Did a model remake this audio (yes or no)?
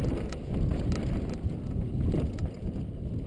no